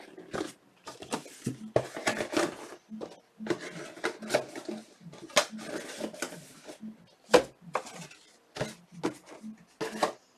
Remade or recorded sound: recorded